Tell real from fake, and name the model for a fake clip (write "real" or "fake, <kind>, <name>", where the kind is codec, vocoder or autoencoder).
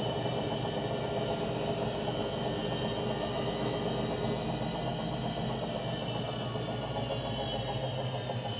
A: real